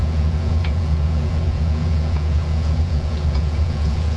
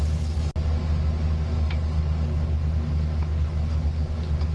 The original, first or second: second